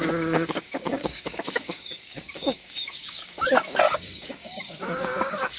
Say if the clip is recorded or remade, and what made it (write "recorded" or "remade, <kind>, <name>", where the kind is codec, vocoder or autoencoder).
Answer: remade, codec, DAC